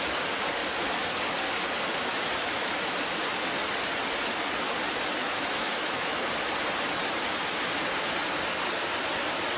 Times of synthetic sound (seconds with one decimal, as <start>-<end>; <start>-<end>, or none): 2.1-2.7; 5.2-6.2